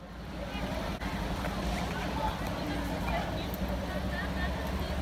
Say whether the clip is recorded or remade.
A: recorded